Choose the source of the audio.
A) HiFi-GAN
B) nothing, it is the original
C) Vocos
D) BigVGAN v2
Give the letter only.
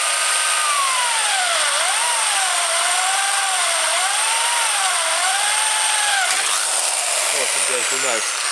D